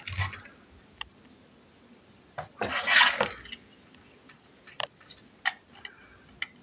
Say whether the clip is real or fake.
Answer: real